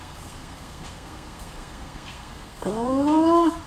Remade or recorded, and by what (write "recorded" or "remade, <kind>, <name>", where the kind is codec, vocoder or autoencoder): remade, codec, SNAC